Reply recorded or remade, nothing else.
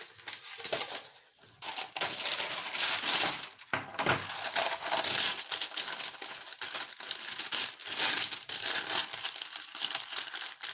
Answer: recorded